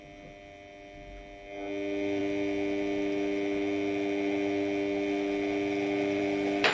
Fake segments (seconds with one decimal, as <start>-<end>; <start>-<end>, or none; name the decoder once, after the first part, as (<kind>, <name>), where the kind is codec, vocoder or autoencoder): none